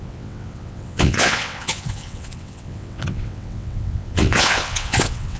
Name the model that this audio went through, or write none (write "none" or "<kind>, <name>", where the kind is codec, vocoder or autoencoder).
vocoder, WaveNeXt